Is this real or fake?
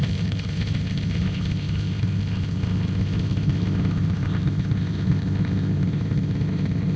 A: fake